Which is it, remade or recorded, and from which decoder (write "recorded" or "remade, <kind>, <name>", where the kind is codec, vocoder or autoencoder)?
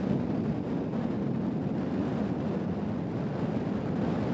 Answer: recorded